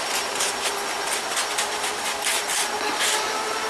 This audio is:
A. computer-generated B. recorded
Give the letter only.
B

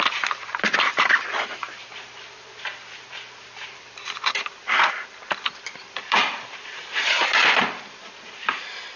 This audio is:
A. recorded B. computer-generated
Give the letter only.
B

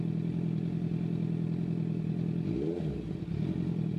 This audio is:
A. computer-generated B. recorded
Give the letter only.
B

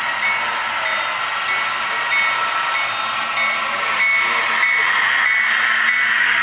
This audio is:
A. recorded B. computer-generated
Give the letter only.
A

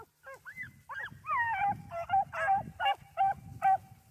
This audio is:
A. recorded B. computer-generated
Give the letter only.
A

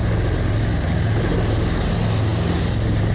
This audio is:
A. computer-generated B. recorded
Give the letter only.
B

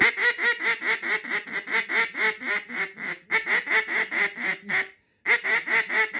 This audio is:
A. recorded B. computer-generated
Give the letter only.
A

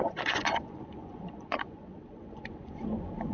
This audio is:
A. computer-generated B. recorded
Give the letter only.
A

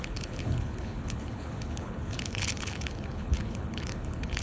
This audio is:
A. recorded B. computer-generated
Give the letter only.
B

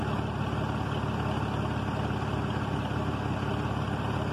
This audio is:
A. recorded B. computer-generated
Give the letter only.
A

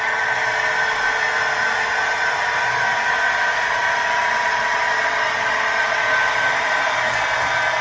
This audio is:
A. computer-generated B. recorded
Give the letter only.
B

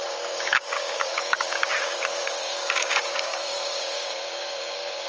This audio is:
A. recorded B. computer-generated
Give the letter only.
B